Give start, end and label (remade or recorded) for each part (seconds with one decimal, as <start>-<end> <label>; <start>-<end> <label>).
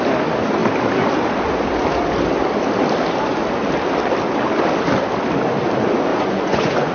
0.0-6.1 recorded; 6.1-6.9 remade